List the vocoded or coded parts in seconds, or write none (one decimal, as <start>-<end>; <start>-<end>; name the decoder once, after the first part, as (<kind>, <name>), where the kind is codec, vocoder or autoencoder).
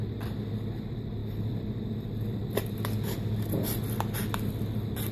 none